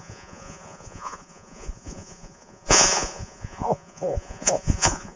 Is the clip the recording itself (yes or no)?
no